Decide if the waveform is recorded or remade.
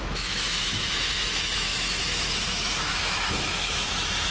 remade